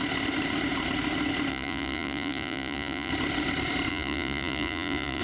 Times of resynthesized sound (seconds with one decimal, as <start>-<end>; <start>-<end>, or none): 1.5-3.1; 3.9-5.2